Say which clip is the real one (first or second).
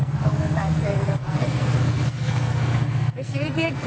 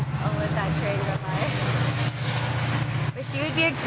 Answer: second